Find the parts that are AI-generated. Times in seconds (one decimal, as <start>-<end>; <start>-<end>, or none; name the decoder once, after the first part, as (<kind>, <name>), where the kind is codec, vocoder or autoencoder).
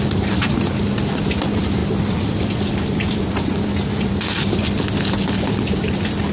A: none